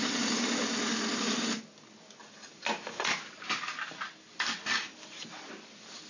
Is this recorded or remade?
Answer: recorded